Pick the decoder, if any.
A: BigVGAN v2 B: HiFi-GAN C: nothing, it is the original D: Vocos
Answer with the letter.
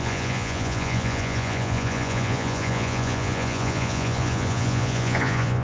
D